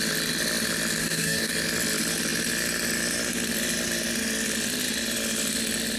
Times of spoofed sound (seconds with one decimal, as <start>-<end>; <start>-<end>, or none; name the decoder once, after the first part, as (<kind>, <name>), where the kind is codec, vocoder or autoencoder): 1.0-1.5 (codec, DAC)